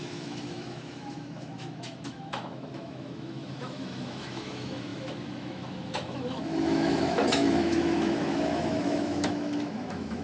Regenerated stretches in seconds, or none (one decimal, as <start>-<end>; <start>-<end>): 0.0-10.2